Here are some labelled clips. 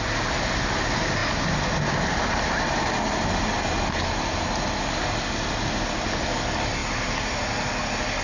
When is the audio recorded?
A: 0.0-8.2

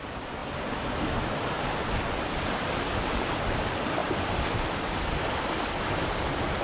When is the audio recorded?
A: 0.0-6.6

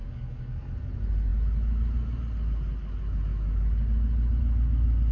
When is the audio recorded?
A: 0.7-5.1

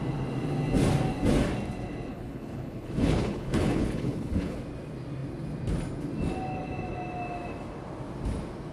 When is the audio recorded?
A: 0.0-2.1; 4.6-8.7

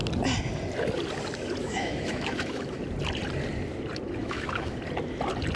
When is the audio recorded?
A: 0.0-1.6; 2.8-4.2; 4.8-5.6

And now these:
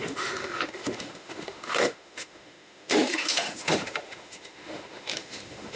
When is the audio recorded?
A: none

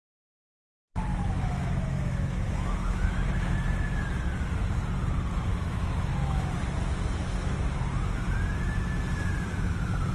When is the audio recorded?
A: 0.0-1.1; 3.5-5.5; 6.5-10.1

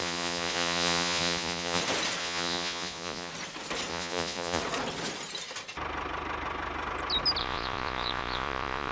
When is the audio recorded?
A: 1.8-2.2; 3.3-3.9; 4.6-7.4